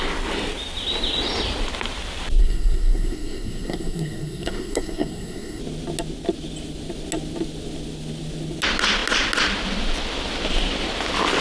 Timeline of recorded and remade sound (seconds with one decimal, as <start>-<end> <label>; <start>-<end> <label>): 0.0-2.4 recorded; 2.4-5.6 remade; 5.6-11.4 recorded